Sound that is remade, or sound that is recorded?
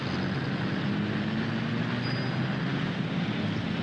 recorded